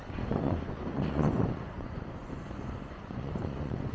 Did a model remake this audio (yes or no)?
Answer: yes